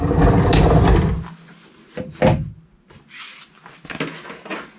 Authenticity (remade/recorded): recorded